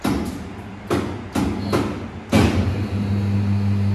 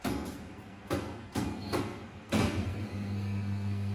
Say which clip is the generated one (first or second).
second